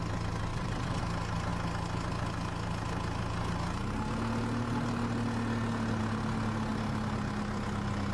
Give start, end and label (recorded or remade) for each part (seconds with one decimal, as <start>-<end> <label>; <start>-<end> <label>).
0.0-0.5 recorded; 0.5-1.0 remade; 1.0-8.1 recorded